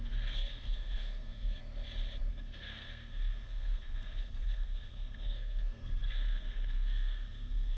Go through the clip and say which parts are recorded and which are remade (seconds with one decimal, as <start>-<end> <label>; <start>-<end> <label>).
0.0-1.6 remade; 1.6-2.3 recorded; 2.3-7.8 remade